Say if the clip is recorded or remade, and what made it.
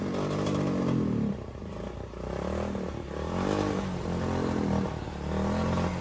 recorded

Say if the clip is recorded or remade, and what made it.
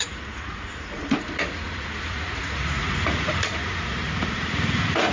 remade, vocoder, Vocos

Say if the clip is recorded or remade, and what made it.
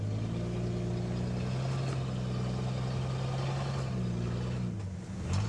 recorded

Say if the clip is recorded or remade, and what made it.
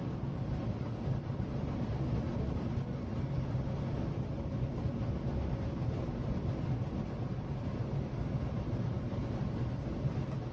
recorded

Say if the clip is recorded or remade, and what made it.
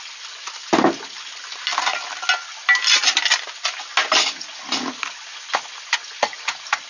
recorded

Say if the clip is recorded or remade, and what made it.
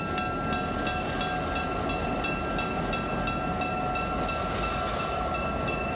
recorded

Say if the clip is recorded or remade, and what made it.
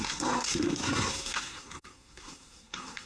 remade, codec, SNAC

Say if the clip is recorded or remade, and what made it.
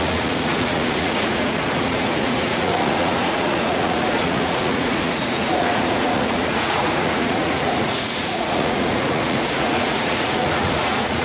remade, vocoder, Vocos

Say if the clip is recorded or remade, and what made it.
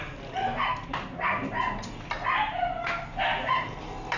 recorded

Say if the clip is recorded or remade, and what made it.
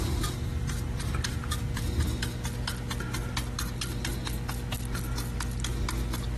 recorded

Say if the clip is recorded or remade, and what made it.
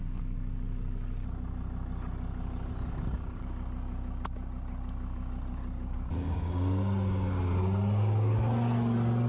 recorded